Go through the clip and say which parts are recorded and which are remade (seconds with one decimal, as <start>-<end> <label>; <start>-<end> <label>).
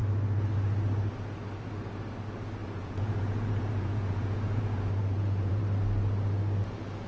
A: 0.0-2.6 recorded; 2.6-5.6 remade; 5.6-7.1 recorded